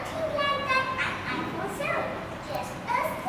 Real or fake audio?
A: real